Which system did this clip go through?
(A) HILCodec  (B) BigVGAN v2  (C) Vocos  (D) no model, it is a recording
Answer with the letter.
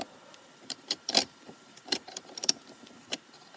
B